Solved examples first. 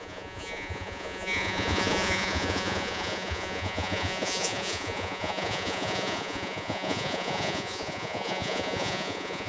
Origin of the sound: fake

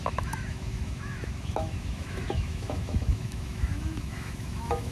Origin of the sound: fake